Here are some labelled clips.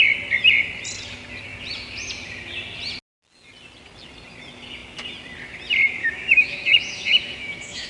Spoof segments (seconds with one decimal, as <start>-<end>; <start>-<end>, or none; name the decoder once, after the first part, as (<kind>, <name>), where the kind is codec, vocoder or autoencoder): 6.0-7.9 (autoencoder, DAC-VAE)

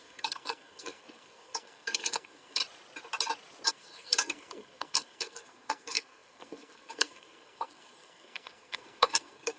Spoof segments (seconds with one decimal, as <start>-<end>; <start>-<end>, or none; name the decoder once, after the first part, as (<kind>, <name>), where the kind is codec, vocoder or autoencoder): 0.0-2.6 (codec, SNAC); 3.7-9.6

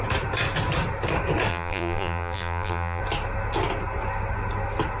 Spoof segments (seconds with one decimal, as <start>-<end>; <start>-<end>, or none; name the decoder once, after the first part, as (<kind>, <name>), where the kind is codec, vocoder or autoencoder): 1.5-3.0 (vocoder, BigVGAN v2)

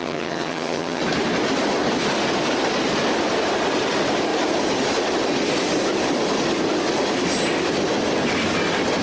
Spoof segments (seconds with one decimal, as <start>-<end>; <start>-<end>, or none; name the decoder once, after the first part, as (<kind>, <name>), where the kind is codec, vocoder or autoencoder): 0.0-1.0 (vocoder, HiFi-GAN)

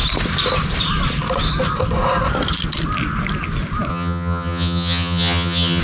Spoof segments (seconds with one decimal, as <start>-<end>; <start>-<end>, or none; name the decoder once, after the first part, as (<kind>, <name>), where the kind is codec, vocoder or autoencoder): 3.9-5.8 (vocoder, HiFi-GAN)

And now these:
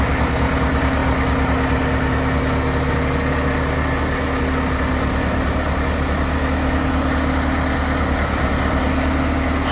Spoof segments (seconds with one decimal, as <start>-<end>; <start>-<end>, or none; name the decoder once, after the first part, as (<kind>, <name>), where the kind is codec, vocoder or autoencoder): none

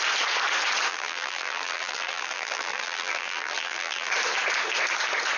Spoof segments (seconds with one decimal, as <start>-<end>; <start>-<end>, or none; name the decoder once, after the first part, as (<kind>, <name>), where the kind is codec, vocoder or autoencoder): 0.9-4.1 (vocoder, BigVGAN v2)